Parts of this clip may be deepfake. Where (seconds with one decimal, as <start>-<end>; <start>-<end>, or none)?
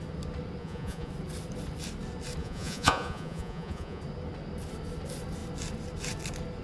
0.6-1.1; 2.4-4.0